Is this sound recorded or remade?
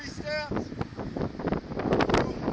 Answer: recorded